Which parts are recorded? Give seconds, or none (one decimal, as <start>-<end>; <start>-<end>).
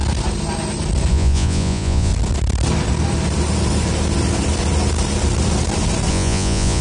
0.0-1.1; 2.1-6.1